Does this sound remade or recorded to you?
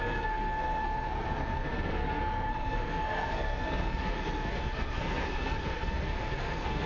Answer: remade